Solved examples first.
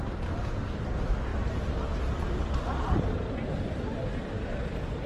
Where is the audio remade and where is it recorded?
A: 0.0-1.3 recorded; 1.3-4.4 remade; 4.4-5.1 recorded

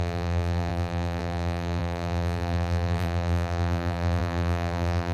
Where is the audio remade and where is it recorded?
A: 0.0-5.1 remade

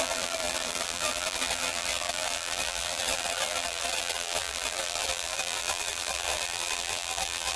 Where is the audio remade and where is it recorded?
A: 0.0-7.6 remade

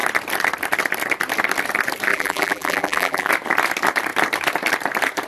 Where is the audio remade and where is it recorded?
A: 0.0-2.1 recorded; 2.1-3.3 remade; 3.3-5.3 recorded